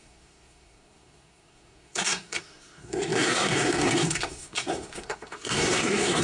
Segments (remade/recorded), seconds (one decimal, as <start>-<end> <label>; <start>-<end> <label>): 0.0-6.2 remade